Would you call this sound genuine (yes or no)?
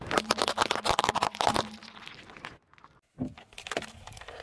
yes